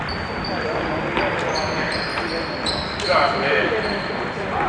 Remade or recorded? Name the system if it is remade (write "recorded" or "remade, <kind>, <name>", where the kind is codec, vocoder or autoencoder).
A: recorded